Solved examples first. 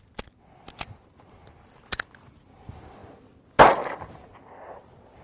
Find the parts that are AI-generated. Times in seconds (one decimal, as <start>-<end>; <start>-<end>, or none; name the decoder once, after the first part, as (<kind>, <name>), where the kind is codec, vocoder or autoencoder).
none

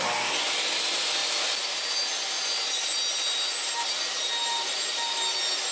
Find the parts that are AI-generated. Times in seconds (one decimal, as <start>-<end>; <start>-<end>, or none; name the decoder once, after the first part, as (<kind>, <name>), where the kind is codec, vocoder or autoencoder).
none

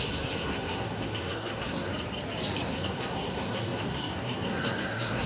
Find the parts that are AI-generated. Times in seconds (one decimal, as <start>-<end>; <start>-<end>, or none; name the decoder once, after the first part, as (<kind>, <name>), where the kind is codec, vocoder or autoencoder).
0.0-1.9 (codec, SNAC); 2.7-5.3

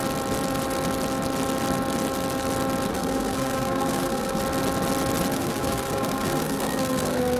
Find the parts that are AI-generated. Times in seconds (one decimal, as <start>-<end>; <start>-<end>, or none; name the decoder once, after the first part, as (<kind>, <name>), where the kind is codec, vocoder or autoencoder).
2.9-4.4 (codec, SNAC); 5.3-7.4

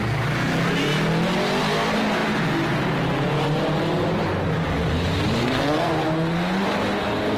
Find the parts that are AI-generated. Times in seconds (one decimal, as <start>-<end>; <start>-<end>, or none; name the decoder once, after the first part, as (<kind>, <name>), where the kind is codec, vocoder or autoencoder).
5.4-5.9 (codec, SNAC)

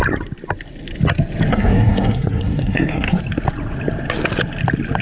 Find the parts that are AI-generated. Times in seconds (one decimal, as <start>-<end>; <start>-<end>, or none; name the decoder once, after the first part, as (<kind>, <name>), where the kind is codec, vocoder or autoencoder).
1.5-3.2 (codec, SNAC)

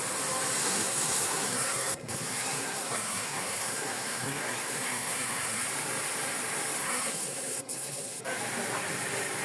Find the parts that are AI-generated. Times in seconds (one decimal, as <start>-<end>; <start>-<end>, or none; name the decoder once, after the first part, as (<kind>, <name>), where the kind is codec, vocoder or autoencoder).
0.6-5.7 (codec, SNAC); 6.8-8.2